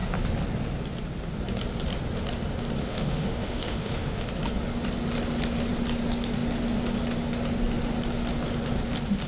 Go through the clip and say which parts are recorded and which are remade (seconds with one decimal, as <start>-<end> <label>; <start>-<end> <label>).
0.0-2.9 recorded; 2.9-4.3 remade; 4.3-9.3 recorded